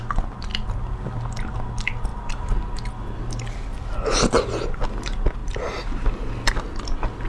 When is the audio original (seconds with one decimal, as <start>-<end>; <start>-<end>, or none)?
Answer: 0.0-7.3